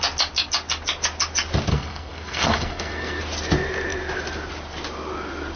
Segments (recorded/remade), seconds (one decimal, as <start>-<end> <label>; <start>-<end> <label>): 0.0-1.7 recorded; 1.7-3.2 remade; 3.2-5.6 recorded